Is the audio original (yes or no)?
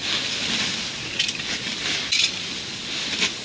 yes